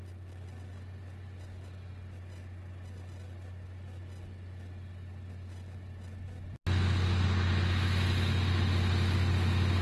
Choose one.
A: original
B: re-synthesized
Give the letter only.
A